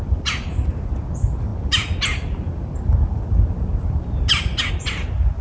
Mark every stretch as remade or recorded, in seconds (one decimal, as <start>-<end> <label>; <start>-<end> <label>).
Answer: 0.0-5.4 recorded